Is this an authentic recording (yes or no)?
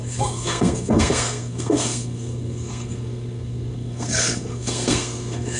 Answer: no